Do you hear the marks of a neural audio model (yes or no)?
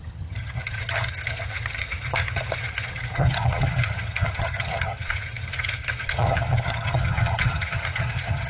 yes